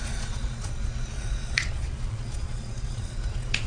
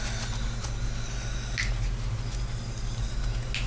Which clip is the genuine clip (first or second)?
second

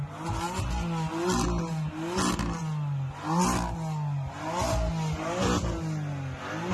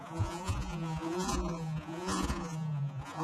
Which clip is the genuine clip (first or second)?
first